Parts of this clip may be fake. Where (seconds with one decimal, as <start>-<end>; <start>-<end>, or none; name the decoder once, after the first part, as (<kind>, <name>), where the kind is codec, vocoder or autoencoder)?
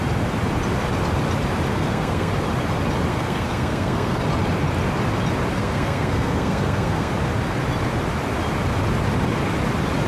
1.7-2.3 (codec, SNAC); 3.1-4.2; 5.6-7.1